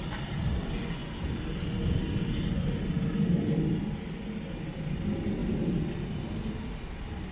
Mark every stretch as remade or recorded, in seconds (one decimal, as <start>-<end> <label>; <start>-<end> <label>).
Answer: 0.0-7.3 recorded